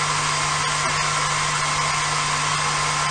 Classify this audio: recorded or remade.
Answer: recorded